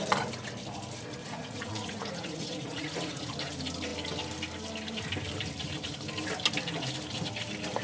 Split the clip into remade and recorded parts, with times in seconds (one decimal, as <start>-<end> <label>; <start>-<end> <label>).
0.0-1.2 recorded; 1.2-3.3 remade; 3.3-7.8 recorded